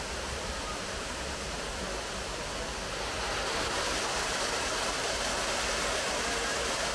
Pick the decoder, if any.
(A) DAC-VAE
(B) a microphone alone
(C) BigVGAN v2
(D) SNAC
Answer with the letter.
B